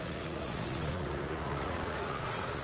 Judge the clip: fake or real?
fake